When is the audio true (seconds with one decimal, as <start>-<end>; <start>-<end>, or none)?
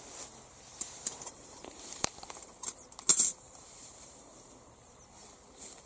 0.0-0.7; 2.1-3.1; 4.5-5.9